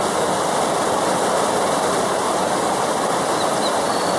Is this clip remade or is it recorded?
recorded